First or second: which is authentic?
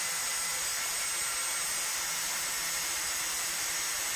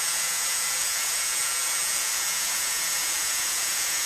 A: first